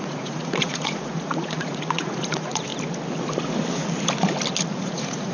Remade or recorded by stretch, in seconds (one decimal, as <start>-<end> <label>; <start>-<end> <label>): 0.0-2.7 remade; 2.7-4.8 recorded; 4.8-5.3 remade